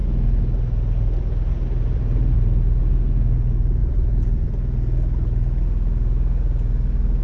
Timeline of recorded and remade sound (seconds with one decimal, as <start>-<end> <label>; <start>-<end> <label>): 0.0-3.8 recorded; 3.8-4.5 remade; 4.5-7.2 recorded